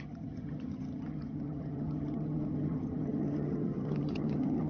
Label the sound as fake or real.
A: fake